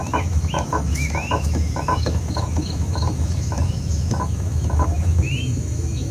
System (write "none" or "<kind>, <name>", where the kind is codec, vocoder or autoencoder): autoencoder, DAC-VAE